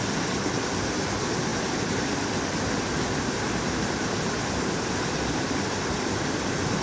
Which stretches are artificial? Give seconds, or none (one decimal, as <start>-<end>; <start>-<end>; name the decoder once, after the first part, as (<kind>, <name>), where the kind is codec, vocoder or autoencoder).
none